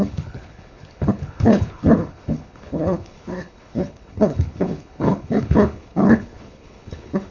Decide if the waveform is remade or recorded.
remade